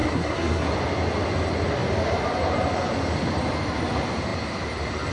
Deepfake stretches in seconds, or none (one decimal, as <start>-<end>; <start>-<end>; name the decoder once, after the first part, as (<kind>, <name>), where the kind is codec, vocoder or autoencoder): 0.0-0.7 (codec, SNAC)